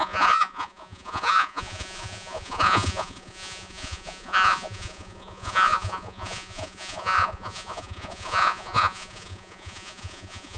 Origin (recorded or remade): remade